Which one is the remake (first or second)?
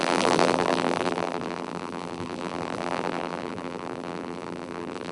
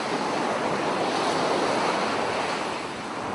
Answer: first